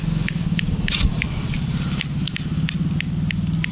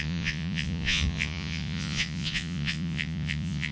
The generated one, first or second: second